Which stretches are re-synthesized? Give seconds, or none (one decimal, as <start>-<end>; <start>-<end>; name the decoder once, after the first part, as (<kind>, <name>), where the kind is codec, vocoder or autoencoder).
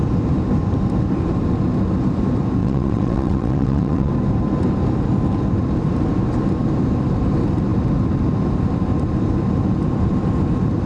2.6-4.1 (vocoder, WaveNeXt)